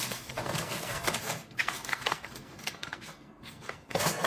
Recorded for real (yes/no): no